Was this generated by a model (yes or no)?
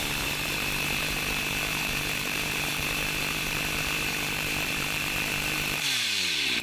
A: yes